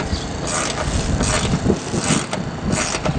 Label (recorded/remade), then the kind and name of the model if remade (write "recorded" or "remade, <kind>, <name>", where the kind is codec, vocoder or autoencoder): recorded